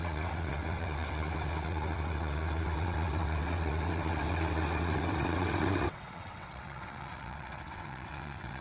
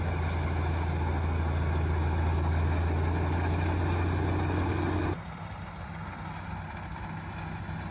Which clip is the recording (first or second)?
second